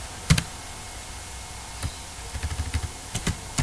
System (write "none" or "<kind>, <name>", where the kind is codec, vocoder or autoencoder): none